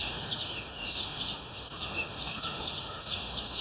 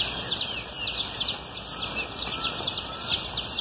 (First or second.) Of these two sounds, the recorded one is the second